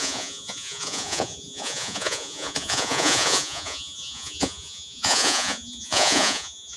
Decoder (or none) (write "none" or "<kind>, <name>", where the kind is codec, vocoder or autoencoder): vocoder, Vocos